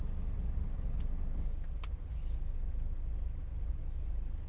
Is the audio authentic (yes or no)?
yes